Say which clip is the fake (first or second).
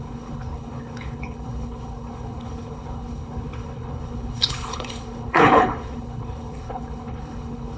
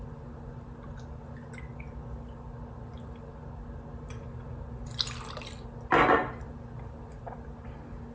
first